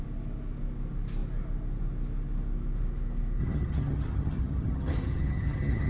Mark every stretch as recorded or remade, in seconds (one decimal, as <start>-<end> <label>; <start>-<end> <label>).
0.0-3.4 recorded; 3.4-5.9 remade